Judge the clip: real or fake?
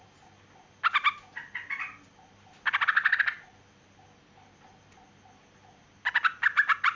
real